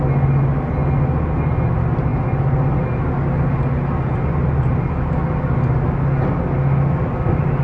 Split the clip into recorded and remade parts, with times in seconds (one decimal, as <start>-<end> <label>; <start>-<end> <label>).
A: 0.0-7.6 recorded